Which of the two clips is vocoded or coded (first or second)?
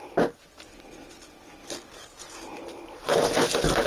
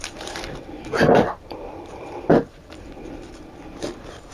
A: second